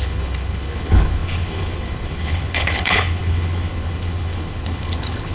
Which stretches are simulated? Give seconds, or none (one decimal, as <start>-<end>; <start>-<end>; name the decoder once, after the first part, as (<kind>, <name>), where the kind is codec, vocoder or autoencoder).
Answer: 0.0-5.3 (codec, HILCodec)